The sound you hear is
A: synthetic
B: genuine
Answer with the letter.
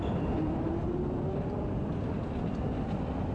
B